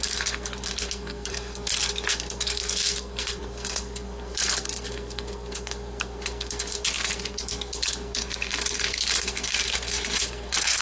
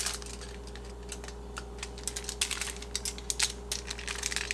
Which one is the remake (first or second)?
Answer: first